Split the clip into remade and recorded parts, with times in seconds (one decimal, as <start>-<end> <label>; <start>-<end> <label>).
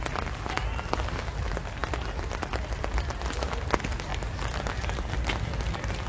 0.0-6.1 recorded